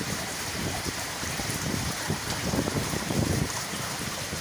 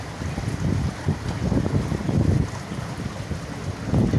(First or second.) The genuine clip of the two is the second